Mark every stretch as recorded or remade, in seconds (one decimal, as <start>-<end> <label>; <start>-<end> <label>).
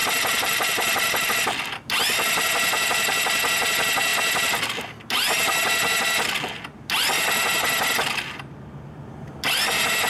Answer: 0.0-1.3 remade; 1.3-10.1 recorded